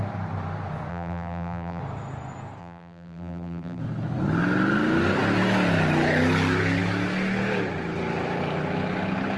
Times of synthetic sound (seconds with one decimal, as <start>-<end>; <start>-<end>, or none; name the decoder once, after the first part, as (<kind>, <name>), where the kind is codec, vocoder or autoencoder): 0.9-1.8 (vocoder, BigVGAN v2); 2.6-3.8